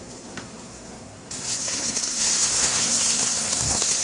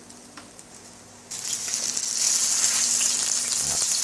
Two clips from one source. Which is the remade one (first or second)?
first